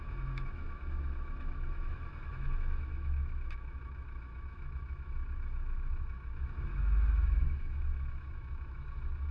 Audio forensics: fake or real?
fake